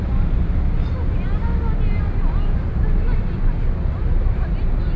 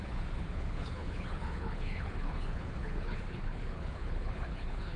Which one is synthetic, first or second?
second